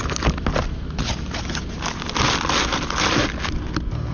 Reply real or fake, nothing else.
real